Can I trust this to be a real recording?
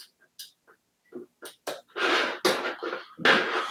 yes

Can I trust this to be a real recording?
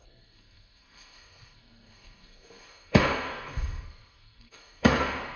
no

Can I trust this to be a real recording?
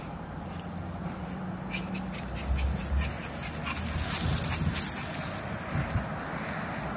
yes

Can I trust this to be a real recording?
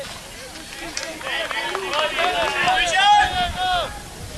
yes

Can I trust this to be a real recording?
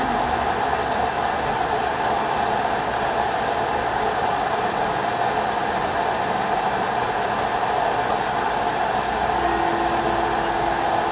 yes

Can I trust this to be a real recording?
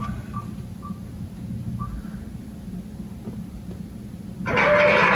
yes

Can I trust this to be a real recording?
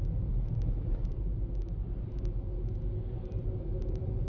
yes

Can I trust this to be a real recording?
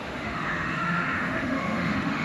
no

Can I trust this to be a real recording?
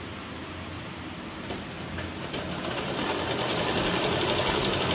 yes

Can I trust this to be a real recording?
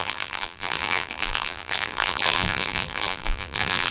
no